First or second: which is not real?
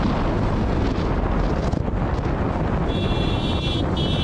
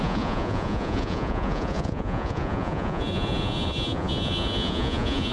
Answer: second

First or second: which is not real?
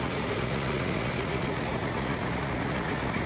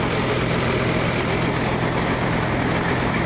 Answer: first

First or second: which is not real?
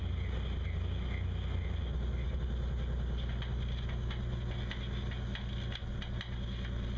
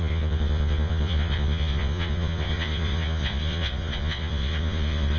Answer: second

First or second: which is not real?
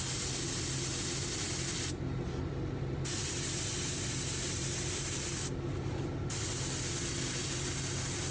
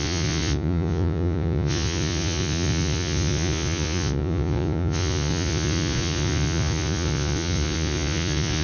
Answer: second